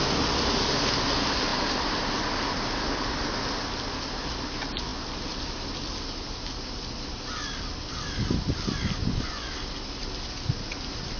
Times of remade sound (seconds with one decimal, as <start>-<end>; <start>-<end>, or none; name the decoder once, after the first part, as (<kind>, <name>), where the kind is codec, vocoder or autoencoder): 9.0-9.5 (vocoder, Vocos)